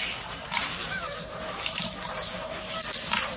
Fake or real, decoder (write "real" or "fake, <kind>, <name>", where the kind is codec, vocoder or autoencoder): fake, vocoder, BigVGAN v2